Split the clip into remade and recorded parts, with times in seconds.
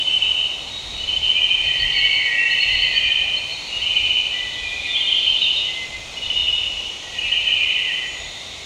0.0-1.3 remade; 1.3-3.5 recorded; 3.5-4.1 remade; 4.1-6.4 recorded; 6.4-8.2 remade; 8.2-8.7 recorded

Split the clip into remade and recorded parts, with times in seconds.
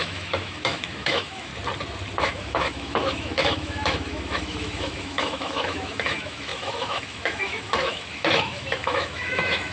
0.0-1.5 remade; 1.5-2.2 recorded; 2.2-9.7 remade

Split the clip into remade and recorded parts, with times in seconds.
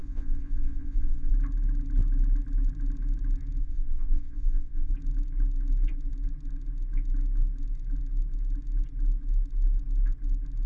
0.0-1.3 remade; 1.3-3.6 recorded; 3.6-4.9 remade; 4.9-10.7 recorded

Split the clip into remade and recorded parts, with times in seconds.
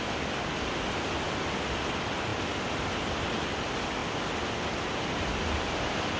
0.0-6.2 recorded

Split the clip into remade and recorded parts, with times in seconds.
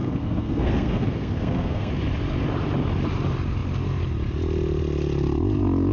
0.0-1.9 remade; 1.9-5.9 recorded